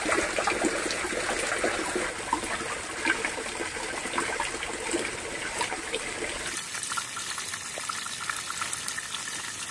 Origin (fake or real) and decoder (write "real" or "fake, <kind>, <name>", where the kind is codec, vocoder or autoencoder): real